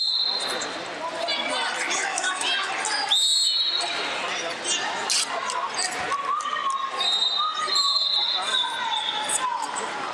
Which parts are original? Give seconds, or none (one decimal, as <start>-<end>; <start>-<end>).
0.0-2.1; 2.7-10.1